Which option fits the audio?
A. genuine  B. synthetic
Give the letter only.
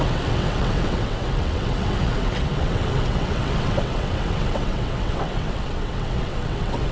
B